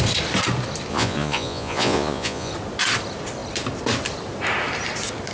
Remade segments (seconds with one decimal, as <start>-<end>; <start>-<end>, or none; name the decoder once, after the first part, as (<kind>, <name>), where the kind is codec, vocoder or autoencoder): 0.9-2.5 (vocoder, Vocos)